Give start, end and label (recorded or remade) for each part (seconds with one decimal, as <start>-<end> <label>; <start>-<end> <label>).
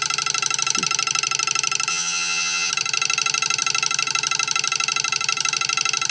0.0-1.9 recorded; 1.9-2.7 remade; 2.7-6.1 recorded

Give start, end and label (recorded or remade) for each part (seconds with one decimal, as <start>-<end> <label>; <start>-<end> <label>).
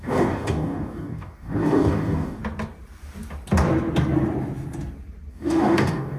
0.0-2.4 remade; 2.4-5.3 recorded; 5.3-6.2 remade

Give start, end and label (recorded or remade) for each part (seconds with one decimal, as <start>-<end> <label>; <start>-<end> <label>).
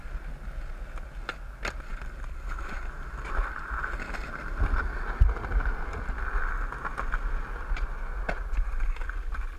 0.0-9.6 recorded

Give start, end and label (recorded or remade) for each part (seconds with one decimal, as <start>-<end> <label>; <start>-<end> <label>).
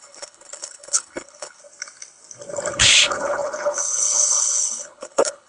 0.0-1.6 remade; 1.6-2.7 recorded; 2.7-5.5 remade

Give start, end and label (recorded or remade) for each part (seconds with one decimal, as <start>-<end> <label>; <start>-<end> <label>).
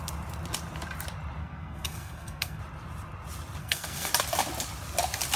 0.0-1.4 recorded; 1.4-2.6 remade; 2.6-3.6 recorded; 3.6-4.1 remade; 4.1-5.4 recorded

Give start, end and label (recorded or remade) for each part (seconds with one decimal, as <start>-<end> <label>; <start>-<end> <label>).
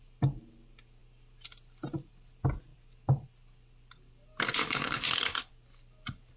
0.0-4.6 recorded; 4.6-5.5 remade; 5.5-6.4 recorded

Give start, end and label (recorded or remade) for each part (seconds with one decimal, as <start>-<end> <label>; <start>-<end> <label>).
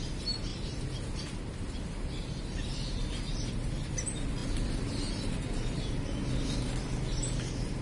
0.0-7.8 recorded